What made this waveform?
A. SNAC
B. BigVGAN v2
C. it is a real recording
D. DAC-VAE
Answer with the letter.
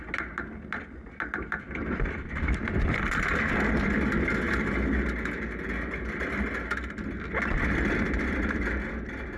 C